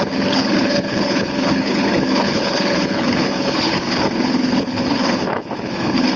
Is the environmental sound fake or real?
fake